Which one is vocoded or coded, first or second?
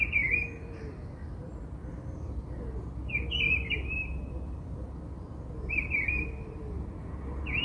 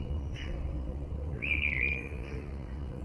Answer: second